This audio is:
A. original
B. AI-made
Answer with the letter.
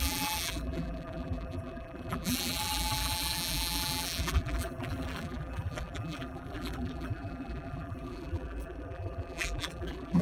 B